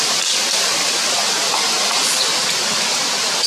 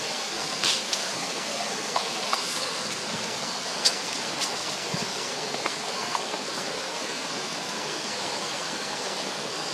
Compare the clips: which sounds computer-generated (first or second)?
second